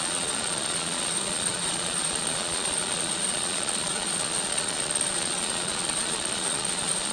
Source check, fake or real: fake